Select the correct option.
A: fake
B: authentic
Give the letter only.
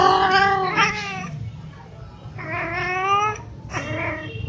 B